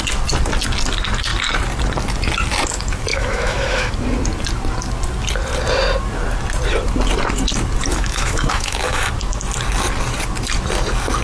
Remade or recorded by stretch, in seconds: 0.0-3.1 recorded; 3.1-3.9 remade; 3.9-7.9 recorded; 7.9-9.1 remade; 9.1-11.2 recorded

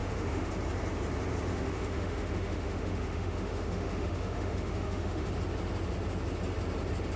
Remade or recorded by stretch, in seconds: 0.0-0.5 remade; 0.5-1.5 recorded; 1.5-5.3 remade; 5.3-7.2 recorded

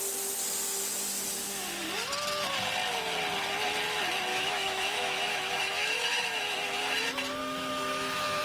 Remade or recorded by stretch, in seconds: 0.0-4.3 recorded; 4.3-6.9 remade; 6.9-7.4 recorded; 7.4-8.4 remade

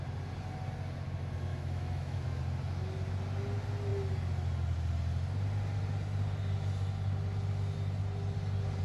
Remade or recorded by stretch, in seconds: 0.0-1.5 recorded; 1.5-2.4 remade; 2.4-8.8 recorded

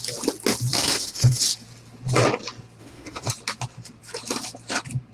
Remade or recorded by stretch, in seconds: 0.0-0.8 recorded; 0.8-1.4 remade; 1.4-2.8 recorded; 2.8-3.3 remade; 3.3-5.1 recorded